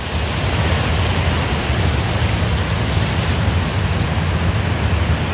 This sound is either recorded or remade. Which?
recorded